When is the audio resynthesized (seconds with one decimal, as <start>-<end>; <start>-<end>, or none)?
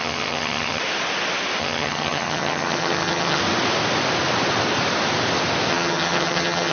0.0-0.8; 1.6-3.4; 5.7-6.7